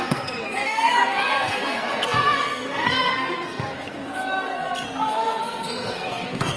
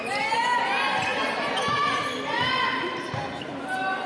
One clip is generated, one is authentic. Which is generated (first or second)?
first